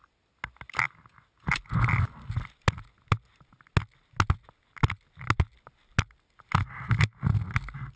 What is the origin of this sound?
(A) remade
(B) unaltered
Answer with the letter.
B